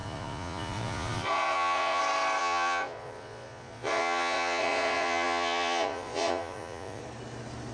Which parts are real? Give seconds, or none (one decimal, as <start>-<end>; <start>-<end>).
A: 2.0-2.4; 7.0-7.7